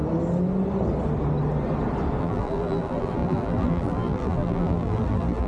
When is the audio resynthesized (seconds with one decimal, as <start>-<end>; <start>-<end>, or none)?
2.2-5.5